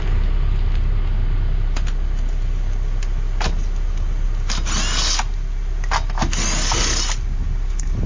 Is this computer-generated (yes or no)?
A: no